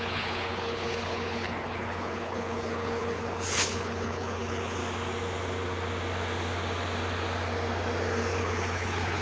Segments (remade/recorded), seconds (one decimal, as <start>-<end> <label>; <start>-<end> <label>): 0.0-4.8 remade; 4.8-8.4 recorded; 8.4-9.2 remade

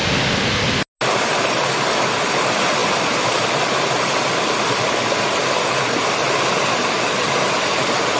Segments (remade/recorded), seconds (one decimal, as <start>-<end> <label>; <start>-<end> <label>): 0.0-8.2 recorded

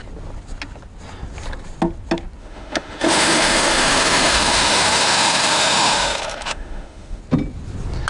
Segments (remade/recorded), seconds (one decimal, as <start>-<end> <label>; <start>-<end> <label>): 0.0-2.4 recorded; 2.4-7.2 remade; 7.2-8.1 recorded

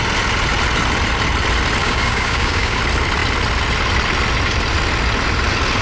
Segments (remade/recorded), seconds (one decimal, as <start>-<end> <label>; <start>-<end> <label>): 0.0-1.8 recorded; 1.8-2.8 remade; 2.8-5.8 recorded

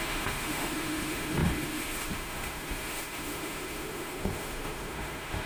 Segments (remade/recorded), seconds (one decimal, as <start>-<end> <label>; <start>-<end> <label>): 0.0-5.5 remade

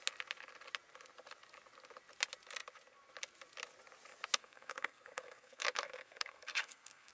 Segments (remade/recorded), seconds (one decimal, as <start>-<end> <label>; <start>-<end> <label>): 0.0-4.4 recorded; 4.4-7.1 remade

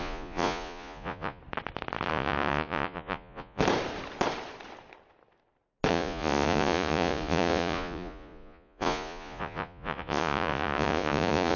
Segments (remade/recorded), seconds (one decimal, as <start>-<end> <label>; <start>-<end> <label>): 0.0-1.4 remade; 1.4-2.1 recorded; 2.1-3.6 remade; 3.6-5.9 recorded; 5.9-11.6 remade